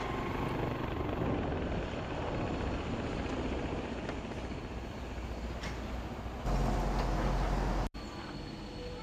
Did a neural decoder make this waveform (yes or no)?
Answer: no